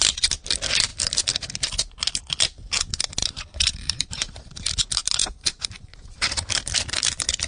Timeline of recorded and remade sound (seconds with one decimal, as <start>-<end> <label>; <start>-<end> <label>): 0.0-3.2 recorded; 3.2-4.5 remade; 4.5-5.2 recorded; 5.2-6.5 remade; 6.5-7.5 recorded